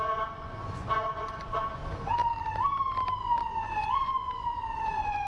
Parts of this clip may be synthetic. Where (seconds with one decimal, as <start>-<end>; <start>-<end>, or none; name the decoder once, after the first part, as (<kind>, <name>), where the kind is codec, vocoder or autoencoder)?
0.0-1.8 (vocoder, Vocos); 3.2-5.3